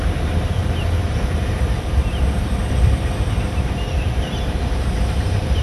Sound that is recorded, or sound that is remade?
remade